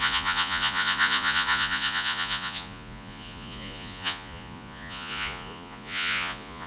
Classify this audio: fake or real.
fake